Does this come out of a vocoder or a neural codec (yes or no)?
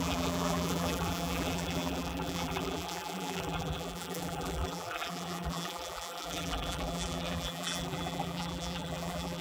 yes